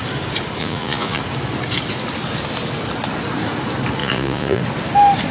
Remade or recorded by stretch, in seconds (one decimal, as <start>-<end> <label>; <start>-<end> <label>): 0.0-0.6 recorded; 0.6-1.2 remade; 1.2-4.0 recorded; 4.0-4.6 remade; 4.6-5.3 recorded